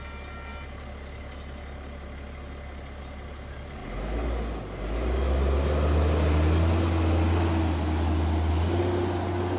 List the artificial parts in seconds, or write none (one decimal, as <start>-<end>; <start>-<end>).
none